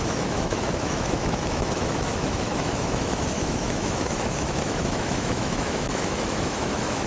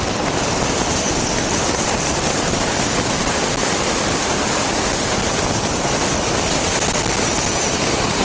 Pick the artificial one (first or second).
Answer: first